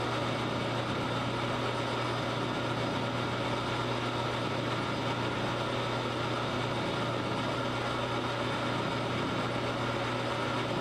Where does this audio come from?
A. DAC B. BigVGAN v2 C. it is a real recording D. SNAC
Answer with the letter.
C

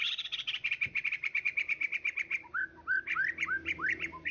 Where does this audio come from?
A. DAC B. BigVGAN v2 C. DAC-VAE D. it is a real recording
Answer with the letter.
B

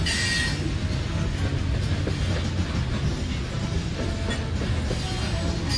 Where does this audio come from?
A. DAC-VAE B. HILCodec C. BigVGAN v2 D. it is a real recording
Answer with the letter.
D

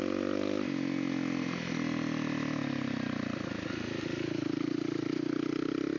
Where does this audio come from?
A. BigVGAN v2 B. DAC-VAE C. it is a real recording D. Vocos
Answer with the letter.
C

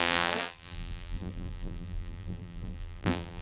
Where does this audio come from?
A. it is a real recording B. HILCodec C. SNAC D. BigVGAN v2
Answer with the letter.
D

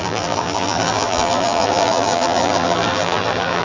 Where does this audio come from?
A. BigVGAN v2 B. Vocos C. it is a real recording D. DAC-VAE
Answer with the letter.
A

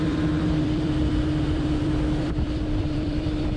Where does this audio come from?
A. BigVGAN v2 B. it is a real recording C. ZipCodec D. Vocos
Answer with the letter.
A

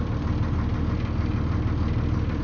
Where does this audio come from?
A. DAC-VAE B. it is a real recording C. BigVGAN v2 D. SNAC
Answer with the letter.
C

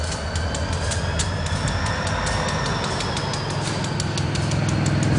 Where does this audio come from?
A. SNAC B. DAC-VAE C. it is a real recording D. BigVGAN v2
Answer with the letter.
C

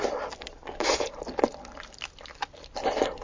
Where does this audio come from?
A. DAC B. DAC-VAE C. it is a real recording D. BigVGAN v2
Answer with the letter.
D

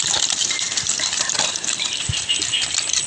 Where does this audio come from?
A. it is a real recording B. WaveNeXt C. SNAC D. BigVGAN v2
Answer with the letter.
D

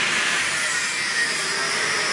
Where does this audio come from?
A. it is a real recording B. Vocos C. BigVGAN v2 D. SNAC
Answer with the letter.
C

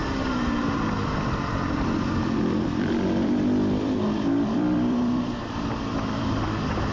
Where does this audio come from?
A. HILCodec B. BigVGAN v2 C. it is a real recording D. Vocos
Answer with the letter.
B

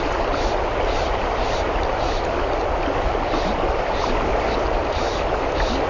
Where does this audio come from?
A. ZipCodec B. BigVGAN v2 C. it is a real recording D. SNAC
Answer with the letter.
C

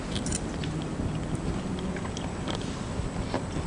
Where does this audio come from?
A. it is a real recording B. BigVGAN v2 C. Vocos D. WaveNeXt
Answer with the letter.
A